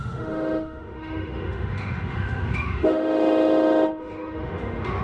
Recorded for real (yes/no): no